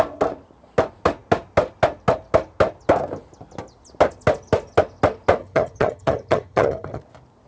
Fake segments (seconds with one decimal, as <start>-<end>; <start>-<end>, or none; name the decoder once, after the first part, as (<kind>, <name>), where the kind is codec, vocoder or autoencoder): 5.4-7.0 (vocoder, HiFi-GAN)